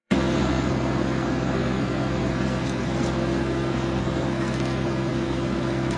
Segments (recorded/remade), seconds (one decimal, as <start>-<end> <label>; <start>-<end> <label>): 0.0-6.0 remade